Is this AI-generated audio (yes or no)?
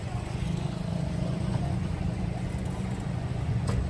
yes